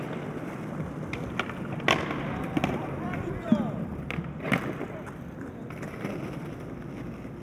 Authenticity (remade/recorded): recorded